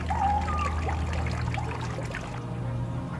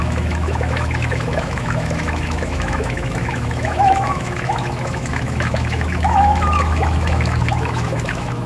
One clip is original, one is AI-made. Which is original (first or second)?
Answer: first